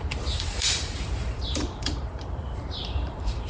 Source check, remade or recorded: remade